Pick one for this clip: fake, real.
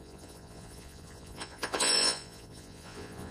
fake